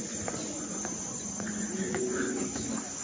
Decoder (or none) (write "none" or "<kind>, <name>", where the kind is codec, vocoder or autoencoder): vocoder, Vocos